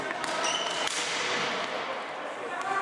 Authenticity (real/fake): real